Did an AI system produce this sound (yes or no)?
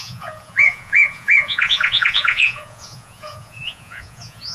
yes